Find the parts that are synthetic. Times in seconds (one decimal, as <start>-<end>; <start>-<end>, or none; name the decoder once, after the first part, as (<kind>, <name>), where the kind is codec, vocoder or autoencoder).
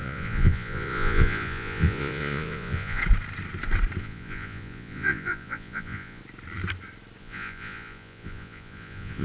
0.0-3.0 (vocoder, Vocos); 4.0-6.2; 7.2-9.2